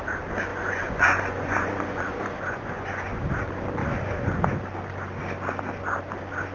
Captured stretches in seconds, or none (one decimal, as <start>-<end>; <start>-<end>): 0.0-0.5; 3.2-3.8; 4.4-6.5

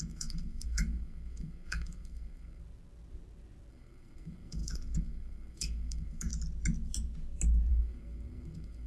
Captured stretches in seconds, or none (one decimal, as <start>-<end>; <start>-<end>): 2.6-3.7; 6.3-7.7